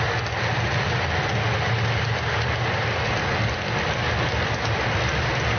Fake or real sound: real